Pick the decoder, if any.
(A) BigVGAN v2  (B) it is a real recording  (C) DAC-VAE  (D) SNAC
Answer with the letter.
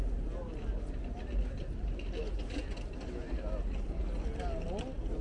B